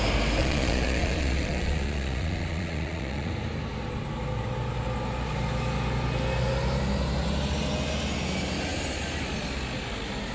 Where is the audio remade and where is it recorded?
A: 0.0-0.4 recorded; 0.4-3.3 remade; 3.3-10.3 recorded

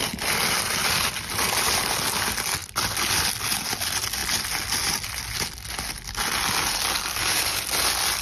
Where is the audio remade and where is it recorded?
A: 0.0-7.1 recorded; 7.1-7.6 remade; 7.6-8.2 recorded

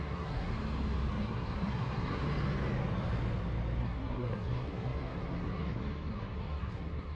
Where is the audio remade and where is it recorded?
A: 0.0-0.5 remade; 0.5-1.1 recorded; 1.1-2.2 remade; 2.2-3.8 recorded; 3.8-7.1 remade

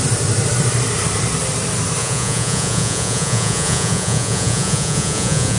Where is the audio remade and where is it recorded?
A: 0.0-2.0 recorded; 2.0-5.6 remade

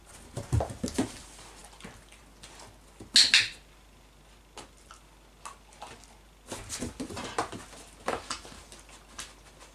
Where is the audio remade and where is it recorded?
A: 0.0-9.7 recorded

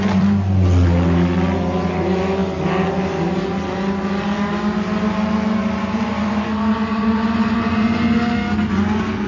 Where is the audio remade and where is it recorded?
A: 0.0-9.3 recorded

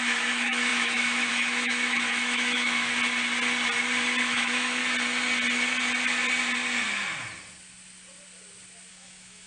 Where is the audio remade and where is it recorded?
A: 0.0-2.9 remade; 2.9-4.2 recorded; 4.2-4.8 remade; 4.8-8.9 recorded; 8.9-9.5 remade